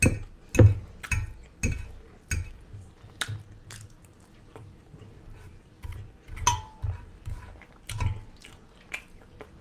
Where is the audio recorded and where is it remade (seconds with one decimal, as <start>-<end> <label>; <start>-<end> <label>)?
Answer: 0.0-9.6 recorded